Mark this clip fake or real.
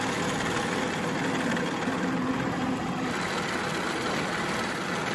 real